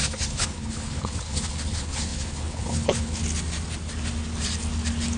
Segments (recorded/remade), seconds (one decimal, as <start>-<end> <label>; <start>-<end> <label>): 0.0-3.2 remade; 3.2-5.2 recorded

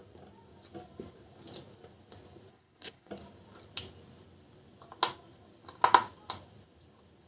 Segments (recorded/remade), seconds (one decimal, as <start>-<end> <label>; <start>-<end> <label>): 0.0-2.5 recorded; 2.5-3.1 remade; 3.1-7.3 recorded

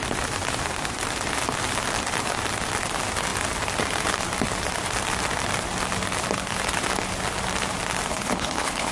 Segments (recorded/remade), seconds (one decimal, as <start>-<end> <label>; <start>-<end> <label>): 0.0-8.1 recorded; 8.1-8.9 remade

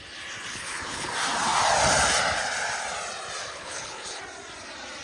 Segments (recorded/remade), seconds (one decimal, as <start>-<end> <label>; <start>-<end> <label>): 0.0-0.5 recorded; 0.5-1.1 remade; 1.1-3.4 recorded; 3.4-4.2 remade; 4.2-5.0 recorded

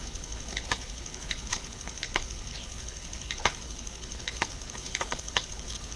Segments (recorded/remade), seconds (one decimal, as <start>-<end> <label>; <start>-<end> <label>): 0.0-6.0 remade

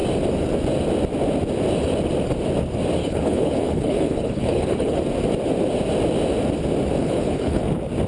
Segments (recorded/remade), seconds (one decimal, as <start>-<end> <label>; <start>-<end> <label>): 0.0-3.0 recorded; 3.0-5.0 remade; 5.0-7.0 recorded; 7.0-7.6 remade; 7.6-8.1 recorded